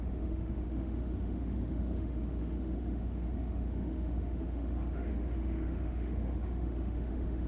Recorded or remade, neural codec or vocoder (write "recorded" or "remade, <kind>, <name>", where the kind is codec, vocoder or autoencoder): remade, autoencoder, DAC-VAE